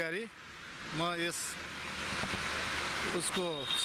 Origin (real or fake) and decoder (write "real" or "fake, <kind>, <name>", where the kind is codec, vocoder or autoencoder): real